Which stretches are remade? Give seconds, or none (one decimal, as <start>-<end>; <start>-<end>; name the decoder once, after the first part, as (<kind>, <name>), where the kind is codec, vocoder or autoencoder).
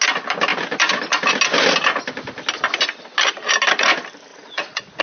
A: 4.3-5.0 (vocoder, Vocos)